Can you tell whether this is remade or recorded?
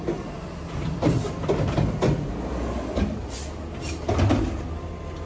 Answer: recorded